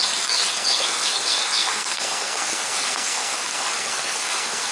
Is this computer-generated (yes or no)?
yes